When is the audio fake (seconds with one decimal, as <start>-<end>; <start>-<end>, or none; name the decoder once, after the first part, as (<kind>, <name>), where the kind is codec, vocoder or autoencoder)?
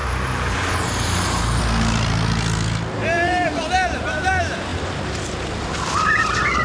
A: 0.0-1.6 (vocoder, BigVGAN v2); 3.0-4.3